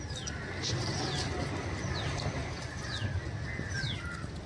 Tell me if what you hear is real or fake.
real